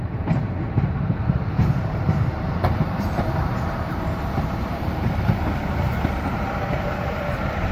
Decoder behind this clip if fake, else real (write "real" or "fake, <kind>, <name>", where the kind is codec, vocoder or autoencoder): fake, vocoder, BigVGAN v2